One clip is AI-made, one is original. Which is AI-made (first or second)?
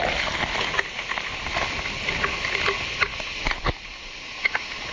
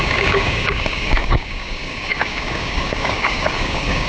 second